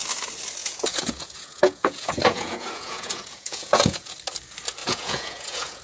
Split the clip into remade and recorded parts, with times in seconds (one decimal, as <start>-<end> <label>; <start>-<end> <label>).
0.0-0.6 recorded; 0.6-4.1 remade; 4.1-4.8 recorded; 4.8-5.8 remade

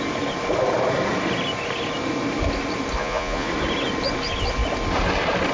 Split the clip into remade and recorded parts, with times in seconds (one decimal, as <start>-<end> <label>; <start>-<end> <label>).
0.0-3.0 recorded; 3.0-3.5 remade; 3.5-5.5 recorded

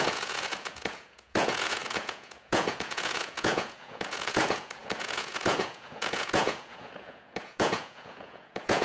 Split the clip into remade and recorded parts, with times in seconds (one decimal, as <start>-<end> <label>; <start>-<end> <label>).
0.0-8.8 remade

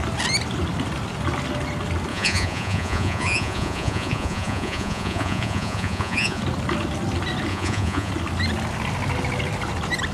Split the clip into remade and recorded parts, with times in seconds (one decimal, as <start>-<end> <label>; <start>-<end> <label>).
0.0-2.1 recorded; 2.1-6.4 remade; 6.4-7.5 recorded; 7.5-8.1 remade; 8.1-10.1 recorded

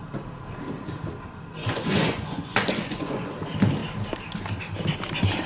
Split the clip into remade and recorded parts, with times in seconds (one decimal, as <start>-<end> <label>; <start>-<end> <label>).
0.0-1.6 recorded; 1.6-3.3 remade; 3.3-5.5 recorded